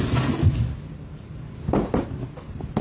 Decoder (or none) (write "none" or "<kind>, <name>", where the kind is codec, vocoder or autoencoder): none